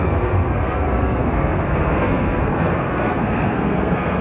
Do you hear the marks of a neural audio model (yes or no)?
yes